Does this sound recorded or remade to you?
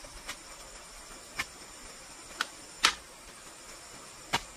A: remade